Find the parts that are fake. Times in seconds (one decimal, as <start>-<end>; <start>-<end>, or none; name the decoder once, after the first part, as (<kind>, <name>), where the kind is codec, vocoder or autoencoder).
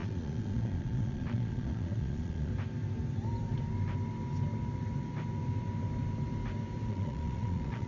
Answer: 0.0-2.5 (vocoder, Vocos); 6.9-7.9